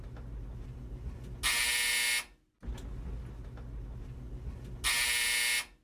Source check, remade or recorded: recorded